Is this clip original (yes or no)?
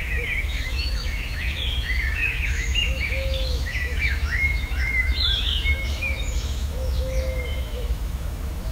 no